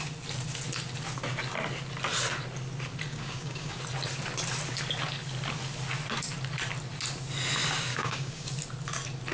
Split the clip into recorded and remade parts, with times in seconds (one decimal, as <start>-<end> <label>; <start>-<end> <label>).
0.0-3.1 recorded; 3.1-3.8 remade; 3.8-7.9 recorded; 7.9-8.5 remade; 8.5-9.3 recorded